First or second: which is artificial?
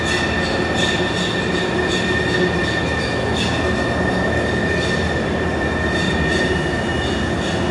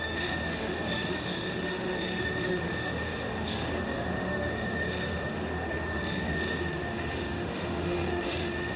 second